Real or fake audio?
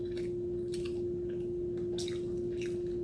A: real